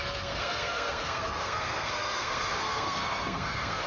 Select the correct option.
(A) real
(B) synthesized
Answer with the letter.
B